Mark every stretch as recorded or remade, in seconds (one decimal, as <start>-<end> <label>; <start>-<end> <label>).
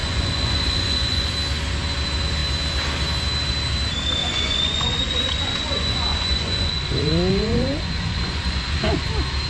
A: 0.0-1.3 remade; 1.3-4.2 recorded; 4.2-9.1 remade; 9.1-9.5 recorded